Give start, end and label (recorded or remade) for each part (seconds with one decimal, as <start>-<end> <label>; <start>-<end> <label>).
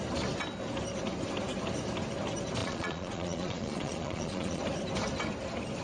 0.0-2.6 recorded; 2.6-4.6 remade; 4.6-5.8 recorded